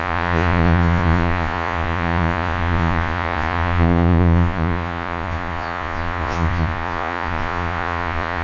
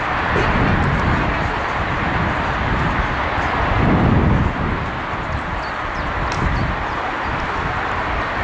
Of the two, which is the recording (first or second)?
second